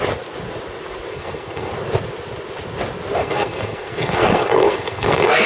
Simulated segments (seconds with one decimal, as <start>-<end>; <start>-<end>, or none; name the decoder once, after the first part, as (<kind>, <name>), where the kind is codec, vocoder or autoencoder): 1.1-1.7 (codec, SNAC); 3.2-5.5